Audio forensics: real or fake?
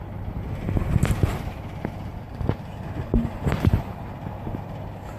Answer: real